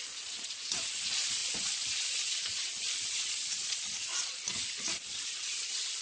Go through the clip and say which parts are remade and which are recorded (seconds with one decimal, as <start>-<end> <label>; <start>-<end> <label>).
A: 0.0-6.0 remade